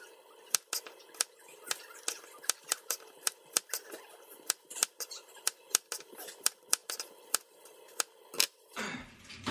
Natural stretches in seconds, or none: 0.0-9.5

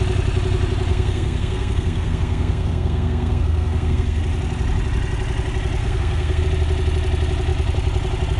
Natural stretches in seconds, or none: 0.0-0.9; 4.2-5.8; 6.4-8.4

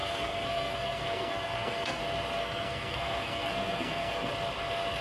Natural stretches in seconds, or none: 2.0-2.4; 4.3-5.0

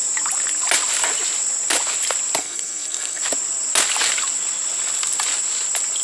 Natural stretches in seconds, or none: 0.0-2.4; 3.2-6.0

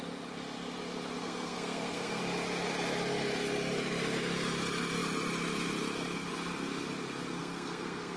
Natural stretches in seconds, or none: 0.0-1.2; 2.2-7.4